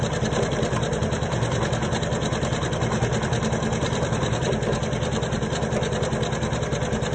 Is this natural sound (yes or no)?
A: yes